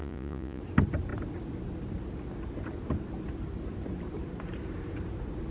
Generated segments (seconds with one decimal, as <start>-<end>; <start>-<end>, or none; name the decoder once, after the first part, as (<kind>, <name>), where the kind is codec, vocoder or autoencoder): 0.0-0.6 (vocoder, Vocos)